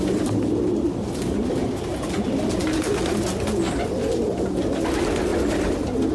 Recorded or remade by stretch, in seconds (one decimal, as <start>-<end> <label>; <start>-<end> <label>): 0.0-6.1 recorded